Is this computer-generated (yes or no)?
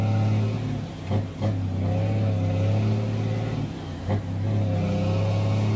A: no